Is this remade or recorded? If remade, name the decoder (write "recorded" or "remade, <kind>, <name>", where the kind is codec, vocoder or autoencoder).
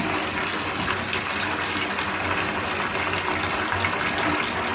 recorded